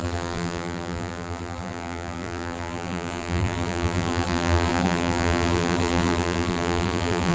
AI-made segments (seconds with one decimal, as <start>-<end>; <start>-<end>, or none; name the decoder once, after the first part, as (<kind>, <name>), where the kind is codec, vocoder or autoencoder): 0.0-7.3 (vocoder, BigVGAN v2)